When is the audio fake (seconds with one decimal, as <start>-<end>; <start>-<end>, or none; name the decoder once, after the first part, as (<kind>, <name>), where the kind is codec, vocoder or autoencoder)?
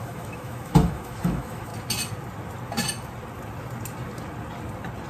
0.0-1.7 (autoencoder, DAC-VAE)